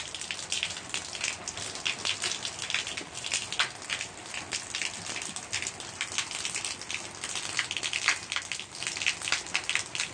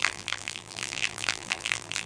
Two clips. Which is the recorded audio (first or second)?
first